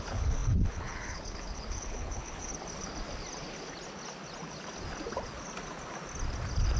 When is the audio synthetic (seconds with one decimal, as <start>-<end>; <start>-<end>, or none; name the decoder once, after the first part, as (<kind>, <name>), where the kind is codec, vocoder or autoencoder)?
0.0-2.5 (codec, HILCodec)